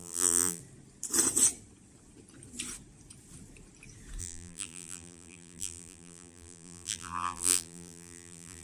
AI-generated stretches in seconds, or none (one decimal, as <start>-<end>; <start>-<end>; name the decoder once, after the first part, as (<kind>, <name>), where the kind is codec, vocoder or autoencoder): 0.0-0.6 (vocoder, BigVGAN v2); 4.2-8.6